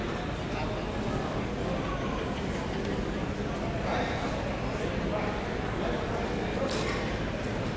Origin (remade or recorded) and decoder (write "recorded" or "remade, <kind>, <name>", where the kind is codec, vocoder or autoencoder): recorded